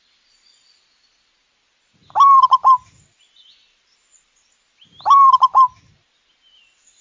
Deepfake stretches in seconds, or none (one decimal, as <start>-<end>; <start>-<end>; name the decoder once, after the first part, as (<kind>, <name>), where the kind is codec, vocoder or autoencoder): none